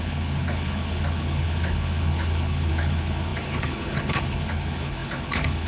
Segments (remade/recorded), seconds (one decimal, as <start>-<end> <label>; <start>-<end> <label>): 0.0-5.7 remade